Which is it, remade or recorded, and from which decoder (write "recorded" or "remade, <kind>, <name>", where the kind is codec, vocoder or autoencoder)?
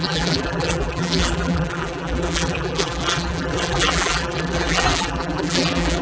remade, vocoder, BigVGAN v2